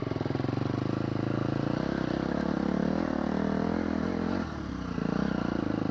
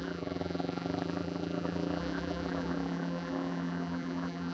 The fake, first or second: second